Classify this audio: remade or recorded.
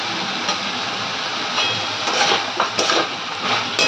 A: recorded